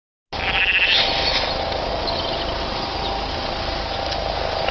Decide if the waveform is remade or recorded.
recorded